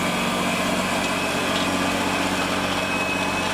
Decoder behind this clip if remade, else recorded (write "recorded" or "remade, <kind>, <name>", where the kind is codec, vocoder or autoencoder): recorded